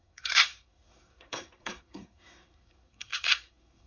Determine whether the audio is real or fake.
fake